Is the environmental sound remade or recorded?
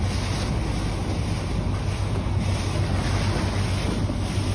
recorded